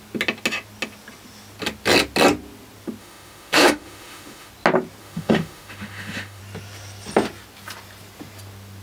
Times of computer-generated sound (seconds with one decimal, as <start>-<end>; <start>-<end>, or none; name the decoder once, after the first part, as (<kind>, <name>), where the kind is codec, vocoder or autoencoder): 3.0-4.5 (autoencoder, DAC-VAE); 5.0-6.4